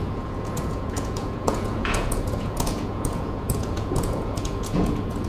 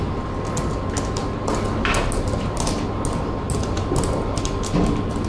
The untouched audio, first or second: second